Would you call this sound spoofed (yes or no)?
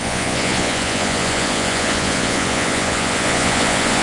yes